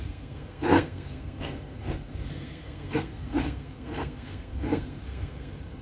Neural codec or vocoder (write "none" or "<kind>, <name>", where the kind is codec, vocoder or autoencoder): codec, SNAC